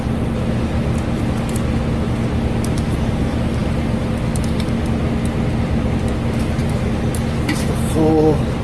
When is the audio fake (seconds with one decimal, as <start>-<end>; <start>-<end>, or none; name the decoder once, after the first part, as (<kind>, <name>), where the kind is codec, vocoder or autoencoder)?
none